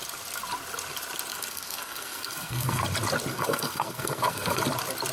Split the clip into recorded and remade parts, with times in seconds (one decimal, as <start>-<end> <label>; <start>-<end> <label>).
0.0-1.3 recorded; 1.3-2.8 remade; 2.8-3.3 recorded; 3.3-4.6 remade; 4.6-5.1 recorded